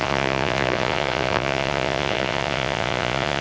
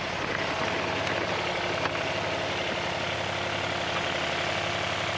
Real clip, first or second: second